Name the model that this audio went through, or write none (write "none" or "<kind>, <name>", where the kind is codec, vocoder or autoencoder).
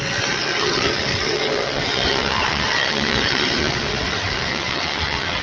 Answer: vocoder, WaveNeXt